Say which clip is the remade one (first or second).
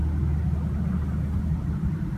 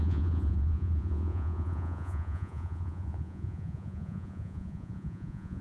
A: second